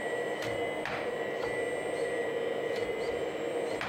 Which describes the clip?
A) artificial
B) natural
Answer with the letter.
B